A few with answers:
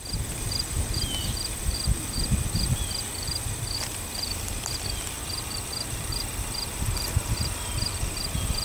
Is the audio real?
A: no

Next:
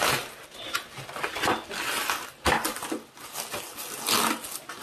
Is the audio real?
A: yes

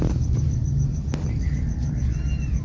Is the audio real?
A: yes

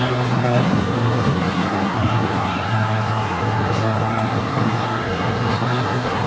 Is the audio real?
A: no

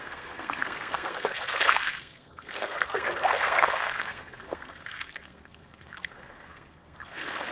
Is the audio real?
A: no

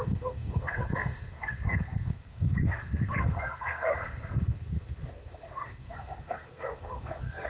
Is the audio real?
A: no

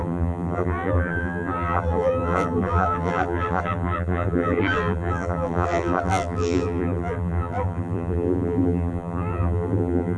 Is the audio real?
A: no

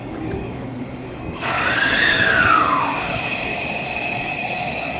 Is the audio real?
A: no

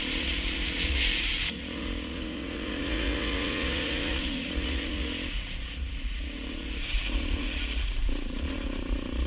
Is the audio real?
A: no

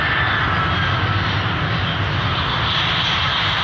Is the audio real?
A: yes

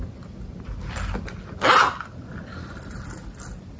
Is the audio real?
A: yes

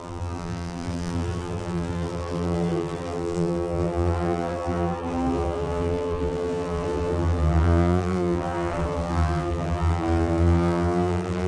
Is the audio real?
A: no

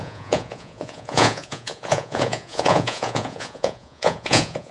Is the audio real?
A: no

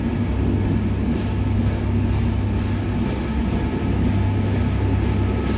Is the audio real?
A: yes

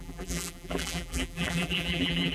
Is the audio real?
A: no